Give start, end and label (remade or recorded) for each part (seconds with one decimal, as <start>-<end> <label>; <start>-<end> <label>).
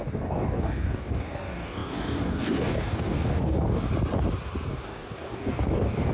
0.0-3.9 remade; 3.9-4.7 recorded; 4.7-6.1 remade